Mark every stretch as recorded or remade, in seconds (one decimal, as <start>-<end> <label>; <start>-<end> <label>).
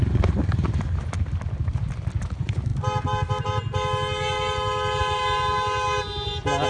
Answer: 0.0-6.7 recorded